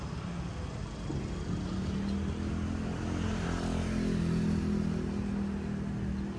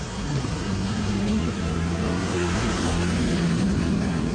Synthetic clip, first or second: second